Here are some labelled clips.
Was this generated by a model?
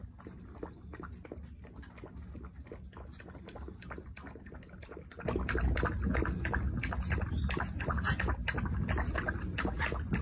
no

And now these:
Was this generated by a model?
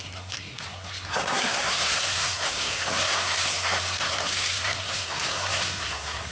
yes